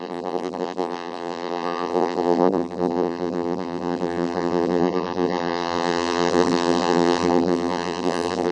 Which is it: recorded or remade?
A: remade